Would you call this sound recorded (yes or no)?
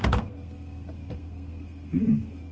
no